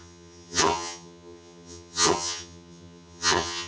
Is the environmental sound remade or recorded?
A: remade